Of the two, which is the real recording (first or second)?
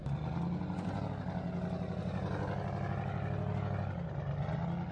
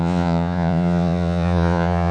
first